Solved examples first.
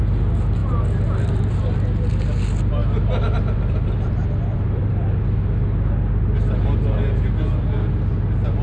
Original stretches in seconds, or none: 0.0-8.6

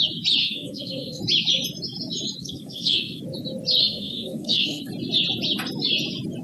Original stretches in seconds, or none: 0.0-0.4; 1.2-2.4; 3.2-3.8; 4.9-6.4